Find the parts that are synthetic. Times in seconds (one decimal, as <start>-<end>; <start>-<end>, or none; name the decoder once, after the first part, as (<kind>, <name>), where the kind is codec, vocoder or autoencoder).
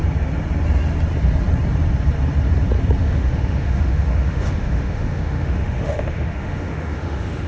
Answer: 3.0-7.5 (autoencoder, DAC-VAE)